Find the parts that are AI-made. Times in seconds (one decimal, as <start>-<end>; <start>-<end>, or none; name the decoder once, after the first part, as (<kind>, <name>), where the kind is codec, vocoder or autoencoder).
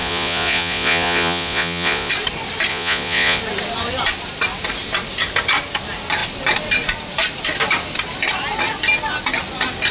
0.0-2.1 (vocoder, Vocos); 2.7-3.4